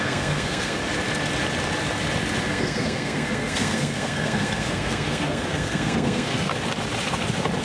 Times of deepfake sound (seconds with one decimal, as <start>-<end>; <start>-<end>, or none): 0.0-0.8; 2.5-6.5